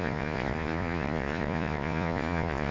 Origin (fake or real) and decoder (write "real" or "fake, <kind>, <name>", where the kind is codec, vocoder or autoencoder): fake, vocoder, Vocos